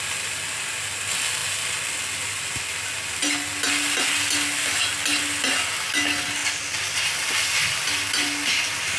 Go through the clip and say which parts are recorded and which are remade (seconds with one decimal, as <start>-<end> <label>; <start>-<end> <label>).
0.0-9.0 recorded